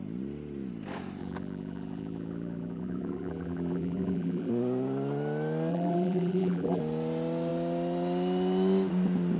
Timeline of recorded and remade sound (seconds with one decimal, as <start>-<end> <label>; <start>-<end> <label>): 0.0-1.2 recorded; 1.2-4.5 remade; 4.5-5.7 recorded; 5.7-6.8 remade; 6.8-9.4 recorded